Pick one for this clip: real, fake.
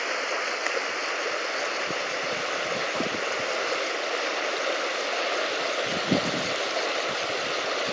real